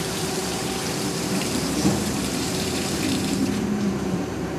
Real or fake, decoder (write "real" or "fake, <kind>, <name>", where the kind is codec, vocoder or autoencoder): fake, vocoder, BigVGAN v2